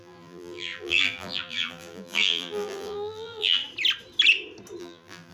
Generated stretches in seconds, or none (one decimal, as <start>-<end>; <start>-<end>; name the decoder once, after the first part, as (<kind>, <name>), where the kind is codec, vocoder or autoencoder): 0.0-3.6 (vocoder, BigVGAN v2); 4.8-5.3